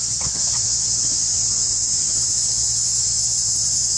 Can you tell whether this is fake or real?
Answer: fake